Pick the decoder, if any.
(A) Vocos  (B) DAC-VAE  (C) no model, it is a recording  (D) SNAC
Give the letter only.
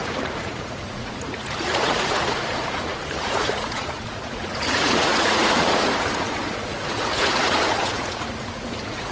A